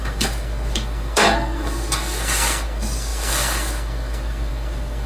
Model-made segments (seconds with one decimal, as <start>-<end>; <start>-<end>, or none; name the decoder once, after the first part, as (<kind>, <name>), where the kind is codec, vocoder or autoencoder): 0.0-5.1 (codec, SNAC)